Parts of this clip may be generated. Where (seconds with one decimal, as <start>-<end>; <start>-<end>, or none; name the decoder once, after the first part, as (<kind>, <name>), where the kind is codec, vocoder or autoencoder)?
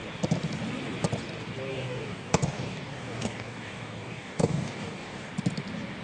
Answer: 1.7-5.3 (codec, DAC)